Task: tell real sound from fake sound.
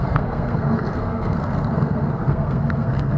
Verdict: fake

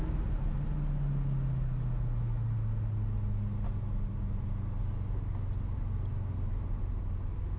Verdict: real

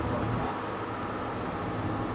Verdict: real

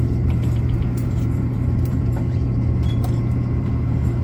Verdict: fake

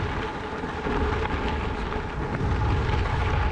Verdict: real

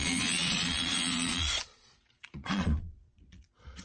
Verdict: fake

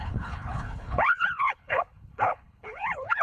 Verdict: fake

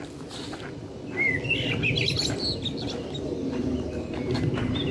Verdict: real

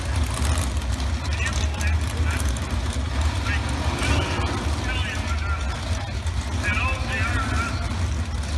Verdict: real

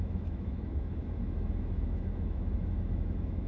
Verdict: fake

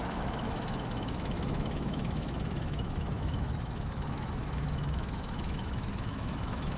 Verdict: fake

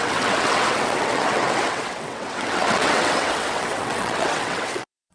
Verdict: fake